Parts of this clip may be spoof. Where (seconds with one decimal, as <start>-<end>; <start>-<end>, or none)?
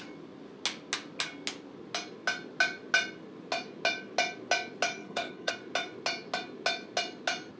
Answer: 5.0-5.5